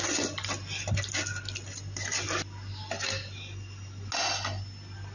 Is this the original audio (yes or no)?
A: yes